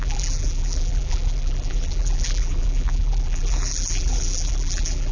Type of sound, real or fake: fake